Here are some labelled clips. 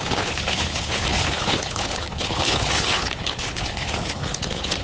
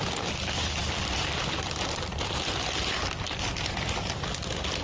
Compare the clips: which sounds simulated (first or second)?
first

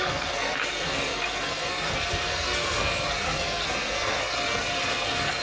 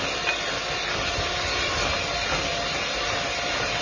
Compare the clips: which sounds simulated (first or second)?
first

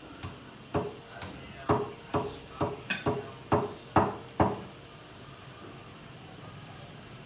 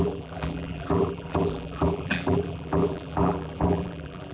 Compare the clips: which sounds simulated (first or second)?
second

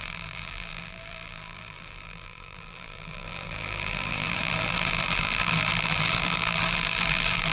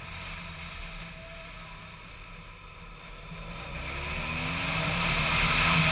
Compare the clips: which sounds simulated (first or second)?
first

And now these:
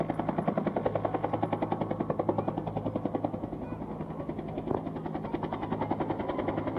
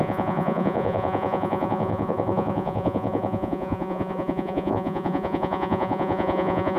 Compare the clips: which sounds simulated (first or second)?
second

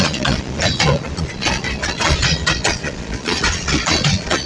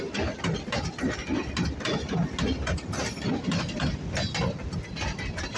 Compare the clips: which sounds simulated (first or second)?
first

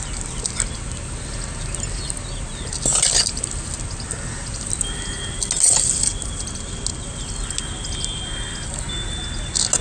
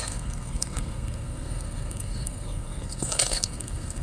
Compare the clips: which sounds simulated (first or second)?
second